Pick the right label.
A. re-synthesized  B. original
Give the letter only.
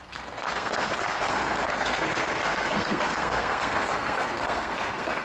A